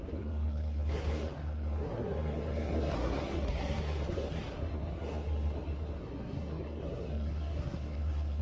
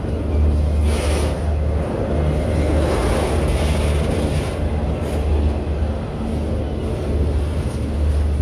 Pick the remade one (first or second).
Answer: first